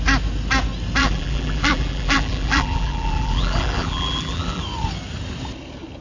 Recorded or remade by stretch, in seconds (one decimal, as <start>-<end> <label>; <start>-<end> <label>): 0.0-1.0 recorded; 1.0-4.6 remade; 4.6-6.0 recorded